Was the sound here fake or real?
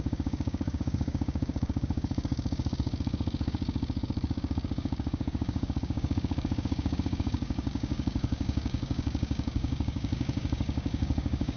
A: fake